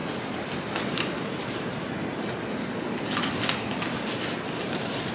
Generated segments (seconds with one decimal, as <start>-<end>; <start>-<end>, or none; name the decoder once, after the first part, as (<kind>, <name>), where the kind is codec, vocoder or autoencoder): none